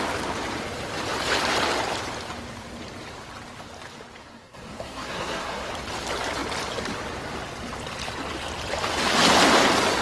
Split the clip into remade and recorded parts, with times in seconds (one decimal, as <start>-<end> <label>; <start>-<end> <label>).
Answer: 0.0-4.2 recorded; 4.2-5.7 remade; 5.7-10.0 recorded